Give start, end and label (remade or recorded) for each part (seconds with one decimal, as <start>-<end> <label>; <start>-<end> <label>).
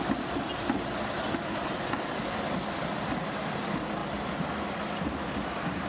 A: 0.0-5.9 recorded